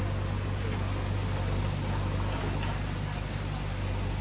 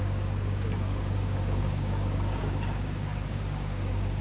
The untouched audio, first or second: first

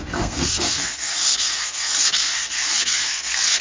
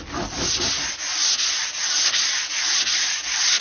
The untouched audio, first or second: second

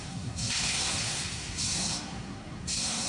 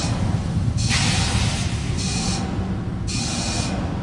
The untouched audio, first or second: second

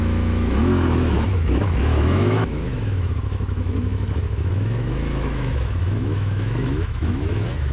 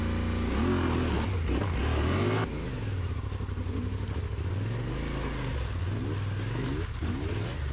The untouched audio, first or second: second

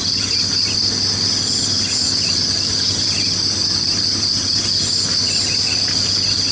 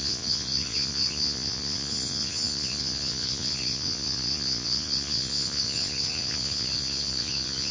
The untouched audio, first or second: first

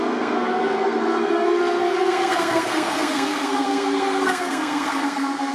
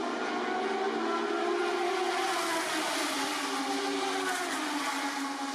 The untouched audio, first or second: second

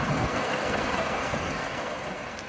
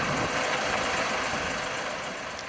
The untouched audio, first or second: second